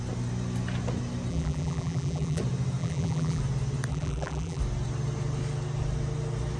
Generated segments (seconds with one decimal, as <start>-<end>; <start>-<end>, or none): 1.3-2.4; 2.8-3.4; 3.9-4.6